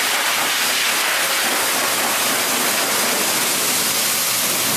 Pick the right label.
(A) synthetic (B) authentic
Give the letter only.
B